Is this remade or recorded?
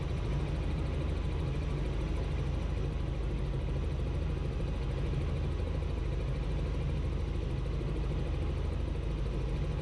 recorded